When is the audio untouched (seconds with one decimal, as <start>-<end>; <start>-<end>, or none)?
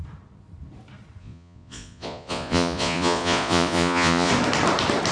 0.0-1.2; 4.3-5.1